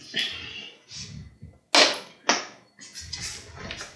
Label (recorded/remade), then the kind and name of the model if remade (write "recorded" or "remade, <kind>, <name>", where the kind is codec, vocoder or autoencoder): recorded